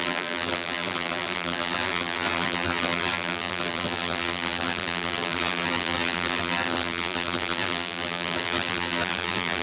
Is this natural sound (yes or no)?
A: no